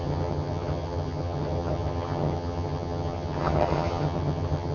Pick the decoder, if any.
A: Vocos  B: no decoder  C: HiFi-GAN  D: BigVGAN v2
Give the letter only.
C